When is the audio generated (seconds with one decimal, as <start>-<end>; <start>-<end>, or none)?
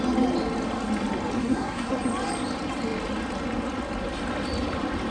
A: 1.4-1.9